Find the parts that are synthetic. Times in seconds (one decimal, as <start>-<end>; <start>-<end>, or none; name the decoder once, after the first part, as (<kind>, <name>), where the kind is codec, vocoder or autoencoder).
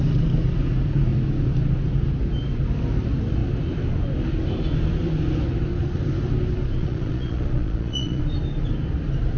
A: 6.8-8.2 (vocoder, Vocos)